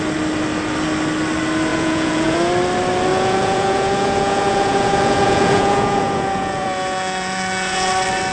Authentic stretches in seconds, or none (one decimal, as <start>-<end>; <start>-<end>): 0.0-1.7; 2.5-3.1; 7.9-8.3